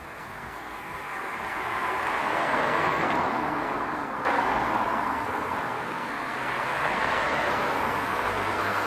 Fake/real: fake